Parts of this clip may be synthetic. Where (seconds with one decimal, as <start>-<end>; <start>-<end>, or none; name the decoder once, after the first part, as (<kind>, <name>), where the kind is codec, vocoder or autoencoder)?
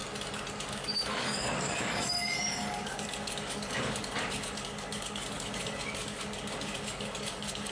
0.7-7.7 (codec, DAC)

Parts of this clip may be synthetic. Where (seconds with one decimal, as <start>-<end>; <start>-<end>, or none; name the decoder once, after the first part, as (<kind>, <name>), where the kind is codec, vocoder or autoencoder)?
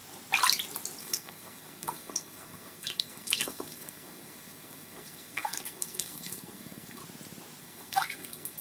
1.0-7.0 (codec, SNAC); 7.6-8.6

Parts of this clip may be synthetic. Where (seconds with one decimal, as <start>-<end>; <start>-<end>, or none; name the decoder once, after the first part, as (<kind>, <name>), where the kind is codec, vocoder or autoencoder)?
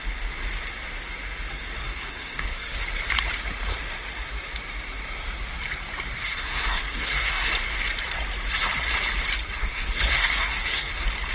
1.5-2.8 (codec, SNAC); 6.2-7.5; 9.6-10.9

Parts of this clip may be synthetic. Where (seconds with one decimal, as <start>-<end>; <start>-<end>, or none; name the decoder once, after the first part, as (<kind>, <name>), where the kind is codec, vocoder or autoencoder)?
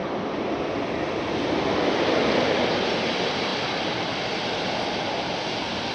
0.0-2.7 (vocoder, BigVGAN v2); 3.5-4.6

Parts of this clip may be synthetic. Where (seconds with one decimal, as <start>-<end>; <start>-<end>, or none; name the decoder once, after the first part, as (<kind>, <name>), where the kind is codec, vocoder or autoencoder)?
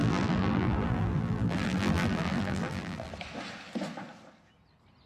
0.0-3.1 (vocoder, BigVGAN v2)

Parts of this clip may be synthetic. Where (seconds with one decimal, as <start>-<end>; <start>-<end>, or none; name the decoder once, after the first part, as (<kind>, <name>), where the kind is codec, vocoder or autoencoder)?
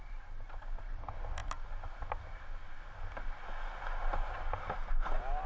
none